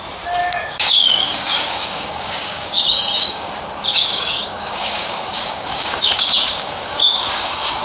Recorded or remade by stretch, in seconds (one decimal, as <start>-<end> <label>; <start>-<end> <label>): 0.0-0.4 recorded; 0.4-3.5 remade; 3.5-3.9 recorded; 3.9-7.8 remade